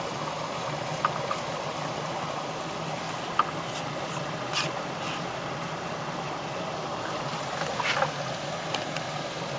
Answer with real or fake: real